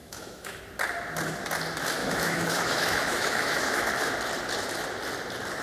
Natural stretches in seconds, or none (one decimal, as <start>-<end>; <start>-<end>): 0.6-2.0; 3.9-5.6